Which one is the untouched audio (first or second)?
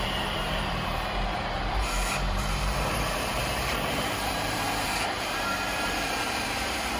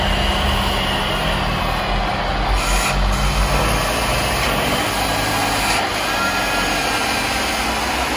second